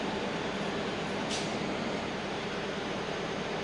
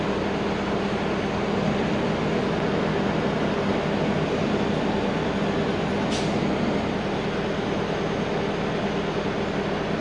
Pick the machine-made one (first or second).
first